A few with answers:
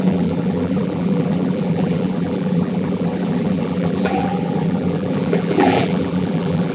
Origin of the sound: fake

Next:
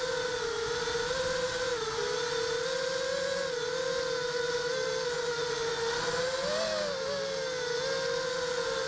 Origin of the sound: real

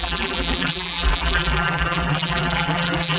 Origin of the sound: fake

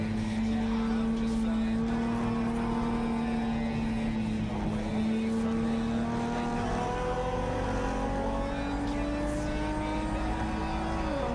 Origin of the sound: real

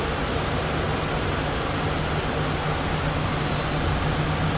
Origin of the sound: real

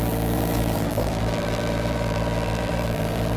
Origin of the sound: fake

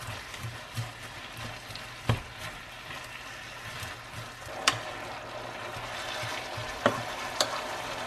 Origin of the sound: real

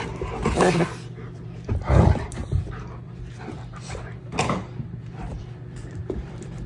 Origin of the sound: fake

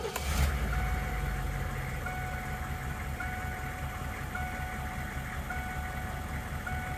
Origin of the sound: real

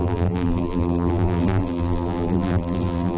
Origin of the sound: fake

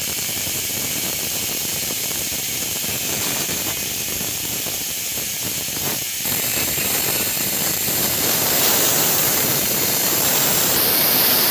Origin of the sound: fake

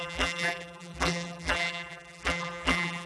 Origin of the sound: fake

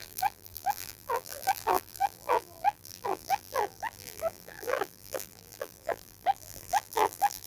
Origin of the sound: fake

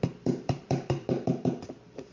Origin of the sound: fake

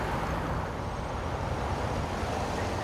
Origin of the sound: real